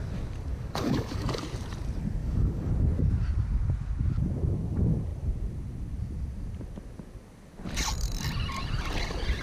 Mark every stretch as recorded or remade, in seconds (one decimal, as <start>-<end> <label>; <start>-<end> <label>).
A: 0.0-0.5 recorded; 0.5-1.4 remade; 1.4-2.2 recorded; 2.2-2.7 remade; 2.7-9.4 recorded